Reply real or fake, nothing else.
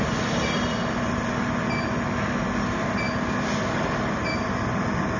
real